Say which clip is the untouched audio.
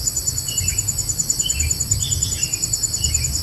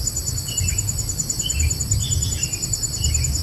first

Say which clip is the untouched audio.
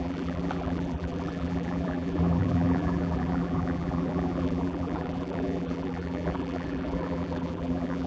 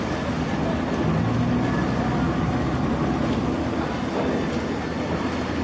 second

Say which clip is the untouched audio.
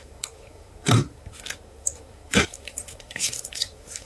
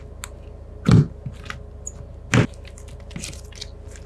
second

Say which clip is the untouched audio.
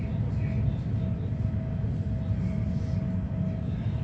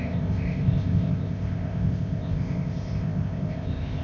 first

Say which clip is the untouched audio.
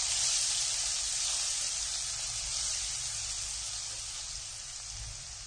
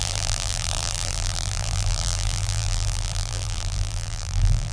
first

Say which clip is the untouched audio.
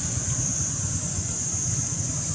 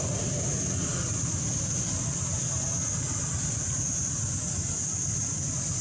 second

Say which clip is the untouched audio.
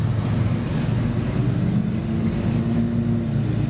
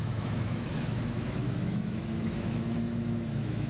first